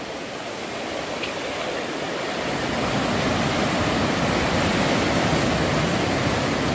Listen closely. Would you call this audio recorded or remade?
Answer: recorded